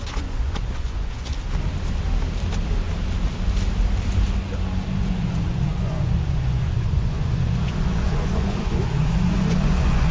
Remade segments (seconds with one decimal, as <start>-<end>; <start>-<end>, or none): 0.0-1.3; 5.0-10.1